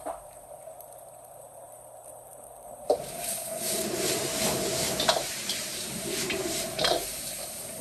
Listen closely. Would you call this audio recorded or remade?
remade